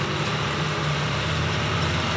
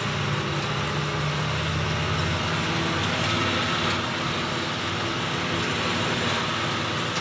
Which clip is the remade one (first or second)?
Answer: first